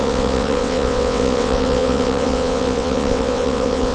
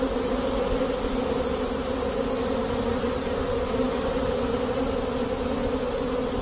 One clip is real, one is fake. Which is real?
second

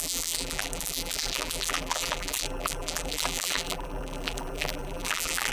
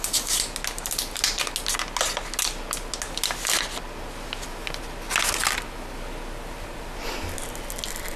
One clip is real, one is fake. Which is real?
second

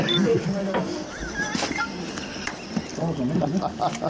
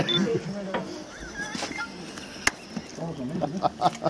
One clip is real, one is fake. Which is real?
second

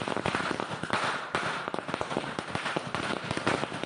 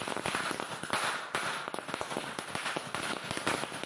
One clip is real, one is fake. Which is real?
second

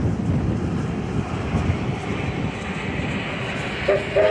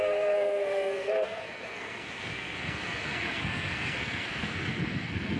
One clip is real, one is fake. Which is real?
first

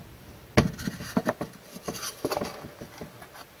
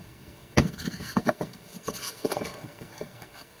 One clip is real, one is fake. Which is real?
first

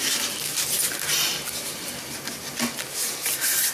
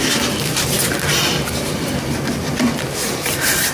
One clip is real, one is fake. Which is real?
first